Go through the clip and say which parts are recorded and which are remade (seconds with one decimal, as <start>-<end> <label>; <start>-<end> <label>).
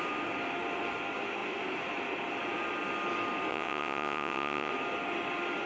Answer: 0.0-3.5 recorded; 3.5-4.7 remade; 4.7-5.7 recorded